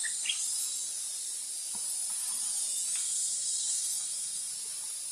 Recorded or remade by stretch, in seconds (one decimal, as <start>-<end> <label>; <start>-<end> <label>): 0.0-3.0 recorded; 3.0-4.5 remade; 4.5-5.1 recorded